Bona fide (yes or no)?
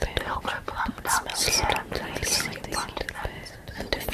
yes